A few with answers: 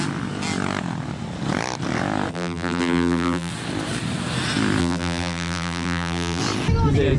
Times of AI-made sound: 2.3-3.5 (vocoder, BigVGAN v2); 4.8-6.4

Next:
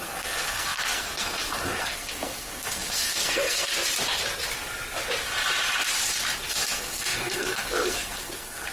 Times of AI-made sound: 0.0-3.7 (codec, SNAC); 6.5-8.7

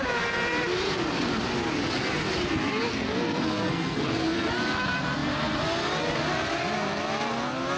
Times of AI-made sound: 2.9-4.5 (codec, SNAC)

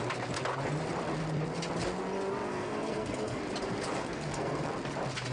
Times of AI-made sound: 2.5-3.4 (codec, SNAC); 3.9-4.7

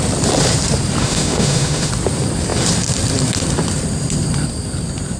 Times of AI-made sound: 1.0-1.9 (autoencoder, DAC-VAE)